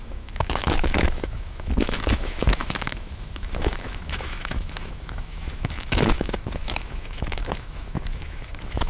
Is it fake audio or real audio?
fake